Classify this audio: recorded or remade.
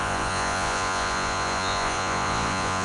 remade